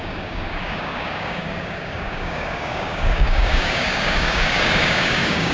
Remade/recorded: remade